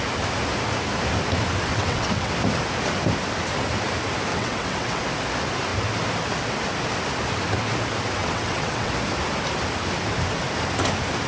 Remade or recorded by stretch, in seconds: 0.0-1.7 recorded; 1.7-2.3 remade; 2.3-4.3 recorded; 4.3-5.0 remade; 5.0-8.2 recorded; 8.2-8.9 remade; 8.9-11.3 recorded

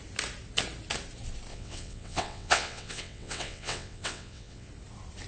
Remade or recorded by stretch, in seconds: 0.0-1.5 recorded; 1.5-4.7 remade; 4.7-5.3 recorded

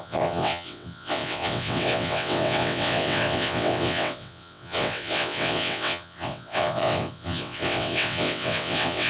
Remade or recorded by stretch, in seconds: 0.0-9.1 remade

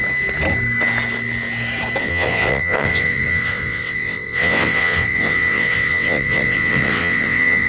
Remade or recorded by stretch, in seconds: 0.0-2.0 recorded; 2.0-7.7 remade